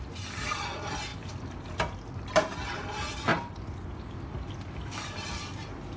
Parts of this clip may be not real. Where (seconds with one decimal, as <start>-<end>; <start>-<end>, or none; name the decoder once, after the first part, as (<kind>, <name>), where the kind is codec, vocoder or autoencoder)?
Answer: 3.3-4.1 (vocoder, BigVGAN v2)